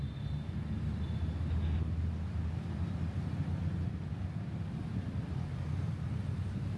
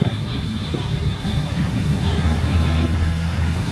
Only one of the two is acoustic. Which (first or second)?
first